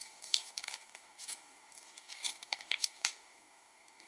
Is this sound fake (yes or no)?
yes